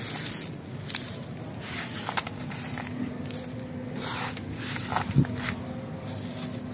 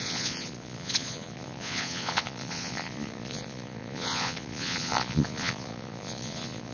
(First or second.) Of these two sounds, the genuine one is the first